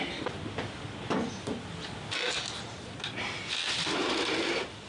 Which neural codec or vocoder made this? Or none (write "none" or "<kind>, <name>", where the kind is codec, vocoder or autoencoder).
none